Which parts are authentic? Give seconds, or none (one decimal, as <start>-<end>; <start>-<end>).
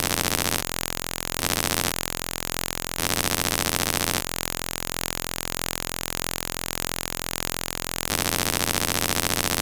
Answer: 0.6-1.4; 1.9-3.0; 4.2-8.1